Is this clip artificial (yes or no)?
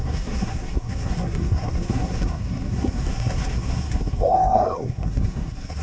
yes